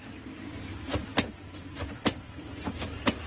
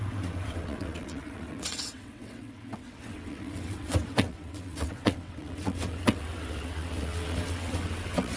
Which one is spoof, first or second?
second